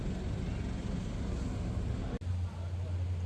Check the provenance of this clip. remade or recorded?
recorded